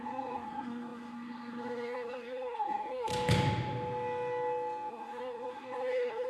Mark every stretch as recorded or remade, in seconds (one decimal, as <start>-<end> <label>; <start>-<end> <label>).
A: 0.0-3.1 remade; 3.1-4.9 recorded; 4.9-6.3 remade